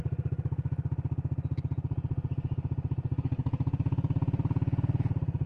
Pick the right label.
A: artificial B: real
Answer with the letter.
B